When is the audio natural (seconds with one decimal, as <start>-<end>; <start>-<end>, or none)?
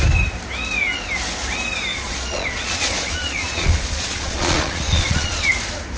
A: 0.0-1.9; 5.5-6.0